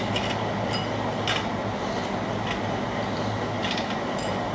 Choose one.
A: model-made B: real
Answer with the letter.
B